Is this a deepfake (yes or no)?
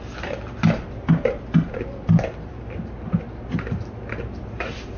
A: no